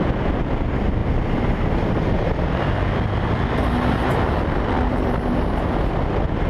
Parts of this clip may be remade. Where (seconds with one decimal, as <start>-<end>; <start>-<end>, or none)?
none